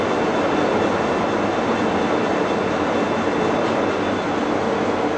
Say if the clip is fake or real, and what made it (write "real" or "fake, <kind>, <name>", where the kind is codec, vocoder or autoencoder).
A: real